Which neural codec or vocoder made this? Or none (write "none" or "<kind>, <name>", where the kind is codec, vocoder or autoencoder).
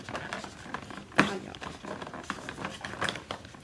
none